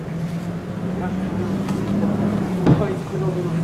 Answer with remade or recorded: recorded